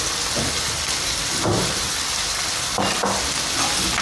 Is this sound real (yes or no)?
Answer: yes